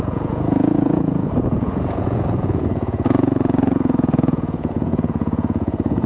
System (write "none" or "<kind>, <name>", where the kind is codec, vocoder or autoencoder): vocoder, Vocos